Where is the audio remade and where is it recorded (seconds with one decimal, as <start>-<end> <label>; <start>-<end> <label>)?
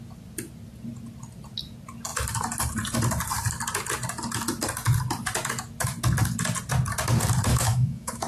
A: 0.0-7.5 recorded; 7.5-8.3 remade